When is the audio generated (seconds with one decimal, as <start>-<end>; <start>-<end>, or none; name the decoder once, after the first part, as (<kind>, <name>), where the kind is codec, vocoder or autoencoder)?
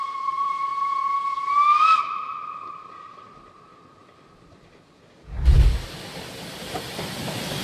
0.0-0.7 (vocoder, BigVGAN v2); 2.0-3.7; 6.6-7.6